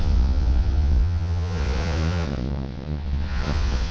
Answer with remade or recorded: remade